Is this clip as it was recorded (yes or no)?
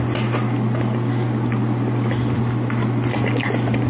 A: yes